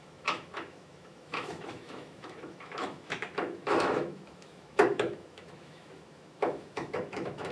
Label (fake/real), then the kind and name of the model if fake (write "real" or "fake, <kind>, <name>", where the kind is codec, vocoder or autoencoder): fake, autoencoder, DAC-VAE